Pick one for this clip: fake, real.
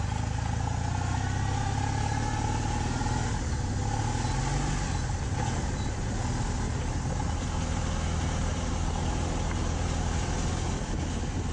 real